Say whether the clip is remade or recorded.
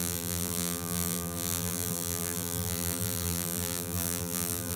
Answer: remade